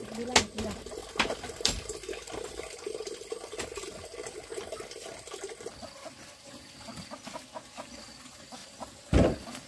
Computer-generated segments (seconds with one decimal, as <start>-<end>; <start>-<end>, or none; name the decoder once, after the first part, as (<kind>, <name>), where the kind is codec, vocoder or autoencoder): 1.0-3.6 (vocoder, BigVGAN v2)